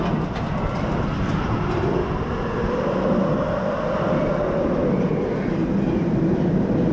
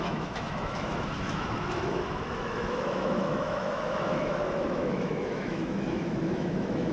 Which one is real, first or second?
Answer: first